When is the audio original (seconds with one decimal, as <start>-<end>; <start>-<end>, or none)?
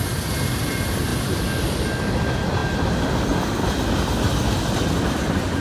0.0-5.6